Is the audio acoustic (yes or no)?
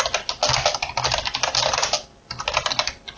yes